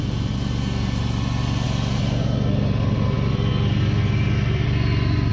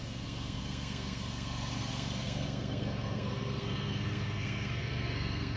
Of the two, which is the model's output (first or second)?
second